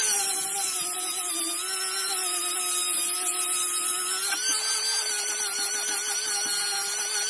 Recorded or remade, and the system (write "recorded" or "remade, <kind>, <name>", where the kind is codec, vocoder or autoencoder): recorded